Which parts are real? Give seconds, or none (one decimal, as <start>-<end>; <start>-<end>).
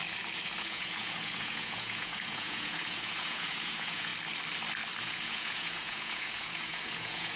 0.0-0.6; 4.1-5.0